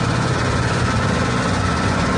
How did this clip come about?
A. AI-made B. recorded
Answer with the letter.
A